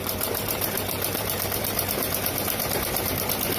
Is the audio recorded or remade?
remade